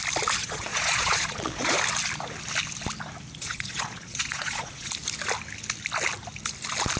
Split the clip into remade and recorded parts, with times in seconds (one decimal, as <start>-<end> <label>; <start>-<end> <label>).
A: 0.0-0.4 recorded; 0.4-1.8 remade; 1.8-3.4 recorded; 3.4-4.9 remade; 4.9-7.0 recorded

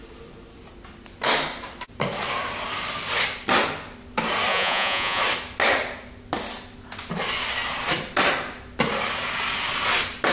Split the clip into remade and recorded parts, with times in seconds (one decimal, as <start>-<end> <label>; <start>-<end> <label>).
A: 0.0-4.5 recorded; 4.5-5.2 remade; 5.2-10.3 recorded

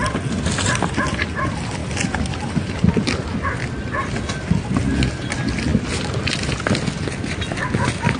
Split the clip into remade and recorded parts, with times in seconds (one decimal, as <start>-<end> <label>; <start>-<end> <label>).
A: 0.0-8.2 recorded

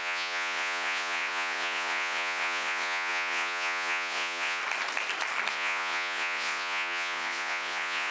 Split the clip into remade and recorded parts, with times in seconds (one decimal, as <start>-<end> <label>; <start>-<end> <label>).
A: 0.0-4.6 remade; 4.6-5.5 recorded; 5.5-8.1 remade

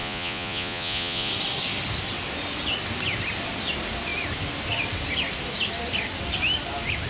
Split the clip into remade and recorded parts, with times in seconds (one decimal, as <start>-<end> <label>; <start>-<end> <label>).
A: 0.0-1.3 remade; 1.3-7.1 recorded